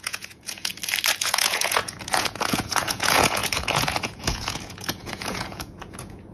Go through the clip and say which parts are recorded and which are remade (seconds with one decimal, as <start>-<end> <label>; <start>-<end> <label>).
0.0-0.7 remade; 0.7-1.2 recorded; 1.2-6.3 remade